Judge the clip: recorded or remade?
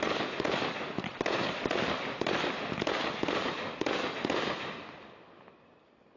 recorded